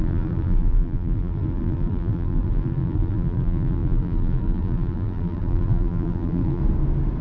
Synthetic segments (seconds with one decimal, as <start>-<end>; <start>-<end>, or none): 0.0-6.6